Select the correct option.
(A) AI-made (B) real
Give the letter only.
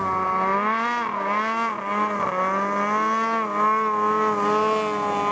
B